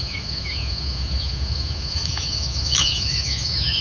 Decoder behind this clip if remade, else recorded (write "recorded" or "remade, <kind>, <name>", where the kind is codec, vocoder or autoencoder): remade, autoencoder, DAC-VAE